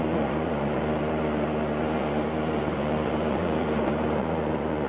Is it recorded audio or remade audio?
remade